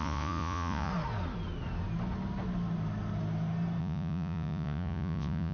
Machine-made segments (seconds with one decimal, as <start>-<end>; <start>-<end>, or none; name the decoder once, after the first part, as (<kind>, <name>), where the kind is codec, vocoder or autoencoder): 0.0-0.9 (vocoder, Vocos); 3.8-5.5